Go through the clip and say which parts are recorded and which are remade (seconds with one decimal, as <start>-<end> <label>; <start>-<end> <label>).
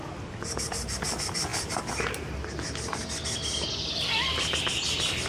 0.0-5.3 recorded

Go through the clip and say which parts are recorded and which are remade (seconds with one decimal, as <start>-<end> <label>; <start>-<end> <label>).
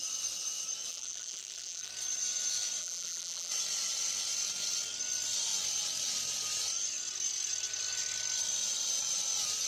0.0-0.9 recorded; 0.9-1.9 remade; 1.9-2.8 recorded; 2.8-3.5 remade; 3.5-9.7 recorded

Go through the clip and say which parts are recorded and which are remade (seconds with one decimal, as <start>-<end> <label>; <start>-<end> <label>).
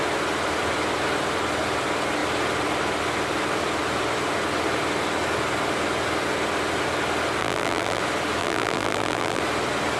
0.0-7.4 recorded; 7.4-8.0 remade; 8.0-8.4 recorded; 8.4-9.4 remade; 9.4-10.0 recorded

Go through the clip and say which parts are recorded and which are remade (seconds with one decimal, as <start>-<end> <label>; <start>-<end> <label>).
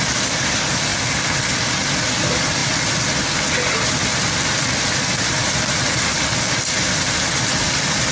0.0-8.1 recorded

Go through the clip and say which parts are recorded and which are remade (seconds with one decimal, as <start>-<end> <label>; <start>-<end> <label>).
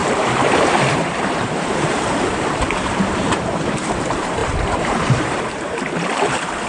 0.0-4.0 remade; 4.0-4.4 recorded; 4.4-5.4 remade; 5.4-6.7 recorded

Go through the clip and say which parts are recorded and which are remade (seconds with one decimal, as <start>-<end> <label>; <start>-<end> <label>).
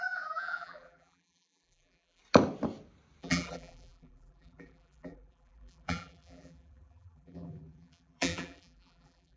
0.0-2.2 remade; 2.2-3.2 recorded; 3.2-9.4 remade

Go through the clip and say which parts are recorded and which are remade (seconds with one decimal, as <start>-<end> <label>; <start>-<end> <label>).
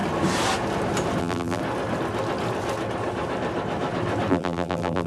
0.0-1.2 recorded; 1.2-1.6 remade; 1.6-4.3 recorded; 4.3-5.1 remade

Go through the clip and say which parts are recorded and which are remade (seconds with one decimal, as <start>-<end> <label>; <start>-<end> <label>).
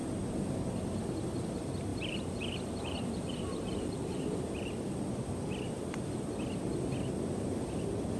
0.0-1.9 recorded; 1.9-4.4 remade; 4.4-8.2 recorded